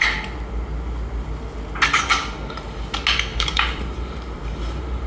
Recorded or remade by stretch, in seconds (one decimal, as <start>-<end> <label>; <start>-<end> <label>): 0.0-3.3 recorded; 3.3-5.1 remade